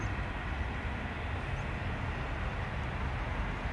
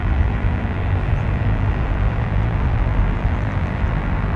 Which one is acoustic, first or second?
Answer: first